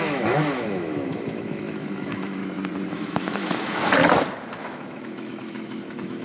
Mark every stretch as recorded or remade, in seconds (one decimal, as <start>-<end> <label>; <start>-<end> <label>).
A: 0.0-2.4 remade; 2.4-2.9 recorded; 2.9-4.0 remade; 4.0-4.6 recorded; 4.6-6.2 remade